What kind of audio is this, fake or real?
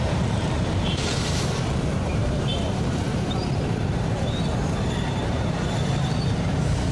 fake